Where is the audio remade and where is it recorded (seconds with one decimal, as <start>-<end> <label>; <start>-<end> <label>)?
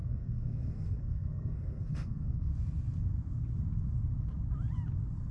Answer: 0.0-2.5 remade; 2.5-5.3 recorded